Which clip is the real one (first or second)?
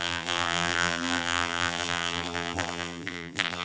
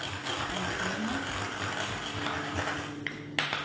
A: second